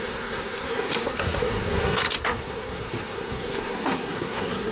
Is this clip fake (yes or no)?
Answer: yes